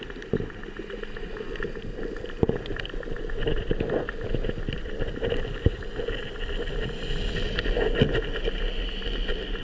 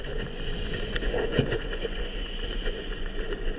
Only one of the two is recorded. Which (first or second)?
first